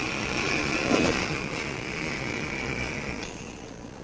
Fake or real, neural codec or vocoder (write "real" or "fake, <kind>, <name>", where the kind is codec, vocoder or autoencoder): fake, vocoder, Vocos